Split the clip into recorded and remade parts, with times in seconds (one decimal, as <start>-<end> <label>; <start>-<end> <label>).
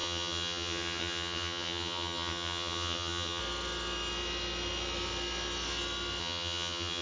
0.0-3.4 remade; 3.4-6.2 recorded; 6.2-7.0 remade